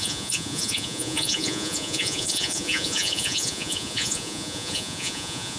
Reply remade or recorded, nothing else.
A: remade